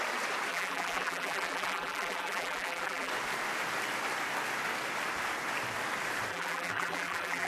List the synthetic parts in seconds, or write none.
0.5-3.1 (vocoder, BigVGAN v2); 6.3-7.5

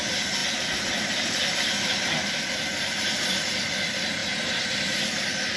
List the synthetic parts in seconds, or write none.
0.4-2.0 (vocoder, BigVGAN v2)

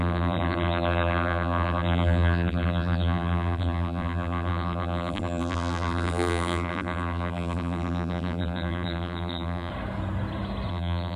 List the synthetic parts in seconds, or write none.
0.0-9.7 (vocoder, BigVGAN v2); 10.7-11.2